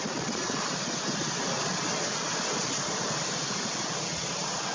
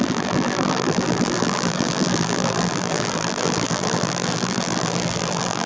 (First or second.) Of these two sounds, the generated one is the second